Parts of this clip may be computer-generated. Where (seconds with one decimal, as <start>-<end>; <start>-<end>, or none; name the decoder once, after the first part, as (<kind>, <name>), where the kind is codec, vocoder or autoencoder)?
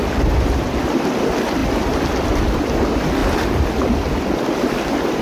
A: 1.6-2.4 (vocoder, BigVGAN v2); 3.2-5.2